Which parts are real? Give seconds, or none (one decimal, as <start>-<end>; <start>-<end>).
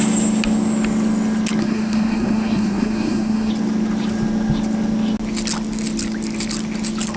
0.0-1.6; 3.5-7.2